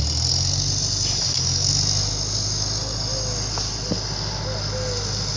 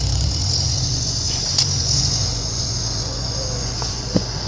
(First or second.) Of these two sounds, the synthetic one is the second